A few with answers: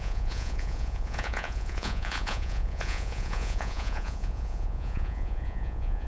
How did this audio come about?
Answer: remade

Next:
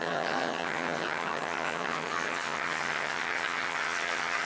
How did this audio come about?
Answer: remade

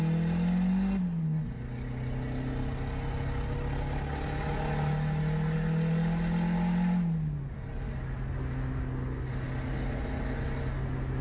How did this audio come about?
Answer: recorded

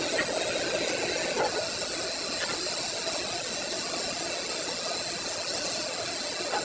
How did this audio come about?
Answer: recorded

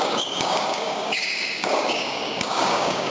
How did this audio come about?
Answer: remade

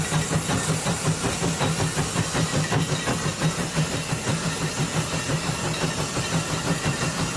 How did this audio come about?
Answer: recorded